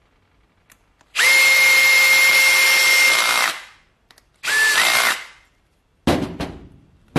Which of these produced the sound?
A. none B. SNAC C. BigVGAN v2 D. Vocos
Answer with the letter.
A